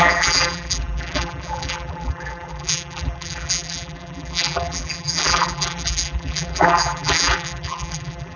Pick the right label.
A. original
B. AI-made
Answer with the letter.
B